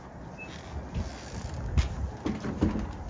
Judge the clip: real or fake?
real